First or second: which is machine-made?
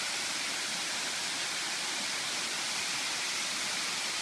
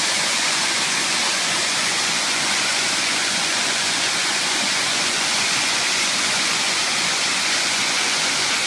second